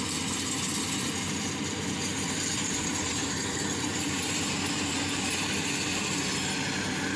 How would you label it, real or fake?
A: real